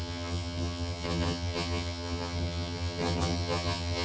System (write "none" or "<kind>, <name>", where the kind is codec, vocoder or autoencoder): vocoder, HiFi-GAN